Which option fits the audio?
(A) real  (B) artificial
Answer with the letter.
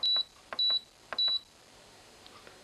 A